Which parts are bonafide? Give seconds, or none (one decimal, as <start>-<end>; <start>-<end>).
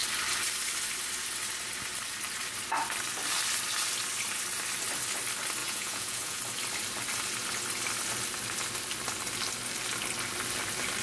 0.0-5.6; 6.4-11.0